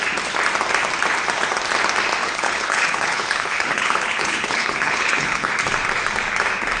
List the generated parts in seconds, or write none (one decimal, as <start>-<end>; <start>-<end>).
2.2-5.5